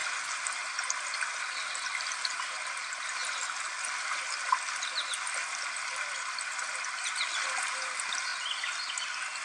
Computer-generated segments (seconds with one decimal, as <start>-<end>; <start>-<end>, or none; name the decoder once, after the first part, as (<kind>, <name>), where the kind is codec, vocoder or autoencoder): none